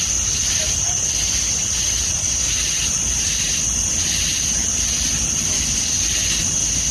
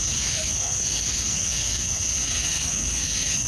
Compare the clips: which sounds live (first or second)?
first